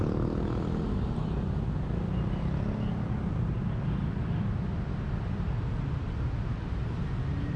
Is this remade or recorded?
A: recorded